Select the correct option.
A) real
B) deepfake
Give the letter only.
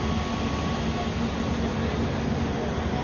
A